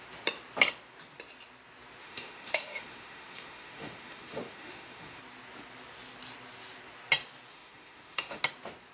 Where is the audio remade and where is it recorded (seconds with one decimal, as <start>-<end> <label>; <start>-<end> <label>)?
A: 0.0-2.0 recorded; 2.0-5.2 remade; 5.2-7.5 recorded; 7.5-8.4 remade; 8.4-8.9 recorded